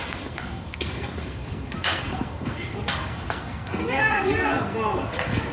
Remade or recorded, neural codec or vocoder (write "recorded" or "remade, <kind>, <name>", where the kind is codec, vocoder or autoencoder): remade, codec, SNAC